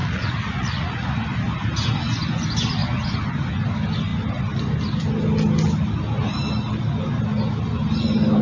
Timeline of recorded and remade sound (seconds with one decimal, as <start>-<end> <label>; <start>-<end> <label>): 0.0-1.1 remade; 1.1-8.4 recorded